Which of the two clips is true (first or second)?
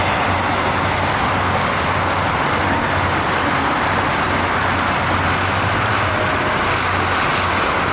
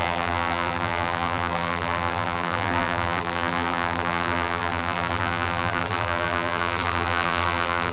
first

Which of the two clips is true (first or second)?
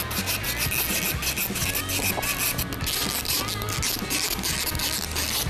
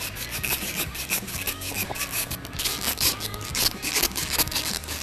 first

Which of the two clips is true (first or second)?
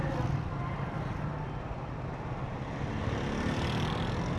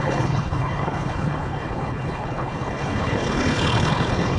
first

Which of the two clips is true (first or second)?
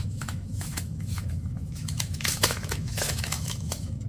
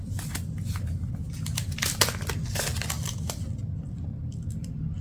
second